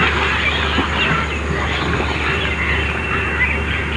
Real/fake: real